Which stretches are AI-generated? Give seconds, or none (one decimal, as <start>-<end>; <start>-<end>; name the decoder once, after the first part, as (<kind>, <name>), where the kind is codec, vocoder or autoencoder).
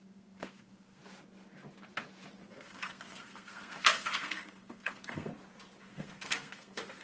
0.0-1.0 (codec, SNAC); 2.5-5.3; 5.8-7.0